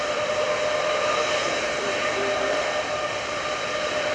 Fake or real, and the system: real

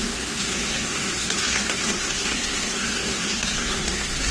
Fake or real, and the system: fake, codec, SNAC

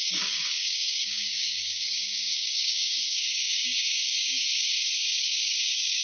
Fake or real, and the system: fake, codec, DAC